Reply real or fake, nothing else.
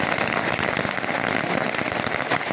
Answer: real